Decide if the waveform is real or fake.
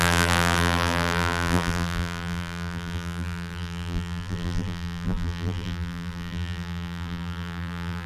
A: fake